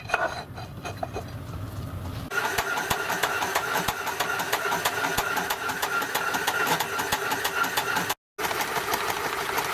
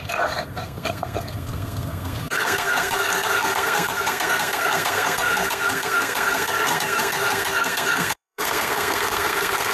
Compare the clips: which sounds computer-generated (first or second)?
second